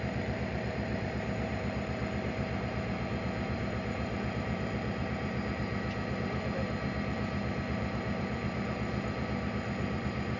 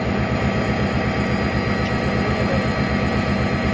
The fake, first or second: first